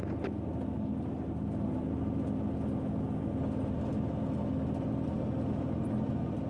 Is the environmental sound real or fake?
real